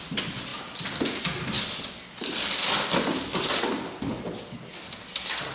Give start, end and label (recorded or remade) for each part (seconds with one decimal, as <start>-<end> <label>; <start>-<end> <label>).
0.0-5.5 recorded